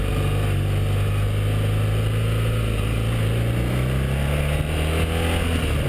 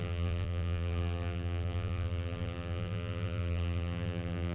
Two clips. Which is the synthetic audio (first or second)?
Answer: second